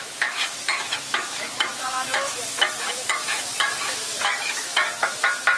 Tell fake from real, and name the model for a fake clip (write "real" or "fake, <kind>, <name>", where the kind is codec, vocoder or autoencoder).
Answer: fake, autoencoder, DAC-VAE